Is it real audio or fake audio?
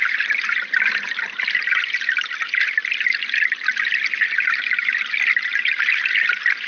real